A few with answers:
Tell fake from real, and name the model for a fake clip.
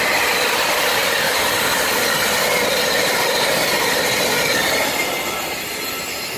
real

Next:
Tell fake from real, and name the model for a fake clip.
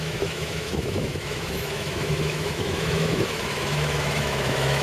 fake, autoencoder, DAC-VAE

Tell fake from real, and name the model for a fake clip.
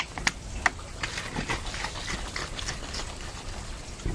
real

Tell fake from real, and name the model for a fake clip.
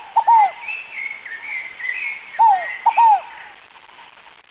real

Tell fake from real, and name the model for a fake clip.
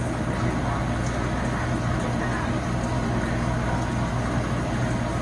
real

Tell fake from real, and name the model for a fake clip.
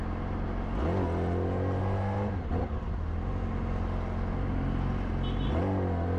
real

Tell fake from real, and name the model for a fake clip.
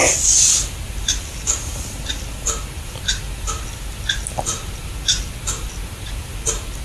real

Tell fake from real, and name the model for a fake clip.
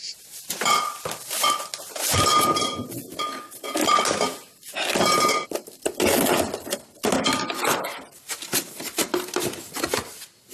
real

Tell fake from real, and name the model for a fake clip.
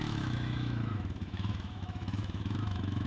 fake, autoencoder, DAC-VAE